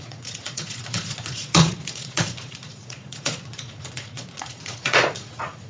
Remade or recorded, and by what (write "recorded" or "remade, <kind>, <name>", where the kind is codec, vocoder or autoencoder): remade, vocoder, Vocos